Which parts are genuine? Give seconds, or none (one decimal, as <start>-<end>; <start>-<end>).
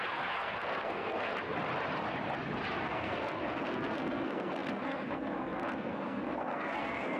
1.3-2.8